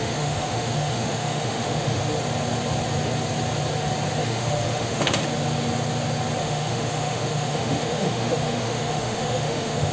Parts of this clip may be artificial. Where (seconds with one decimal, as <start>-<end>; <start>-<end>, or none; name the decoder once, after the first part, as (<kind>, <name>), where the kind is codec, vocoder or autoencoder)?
0.0-2.0 (autoencoder, DAC-VAE); 4.2-5.2; 6.4-9.9